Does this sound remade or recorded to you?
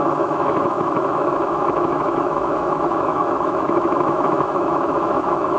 remade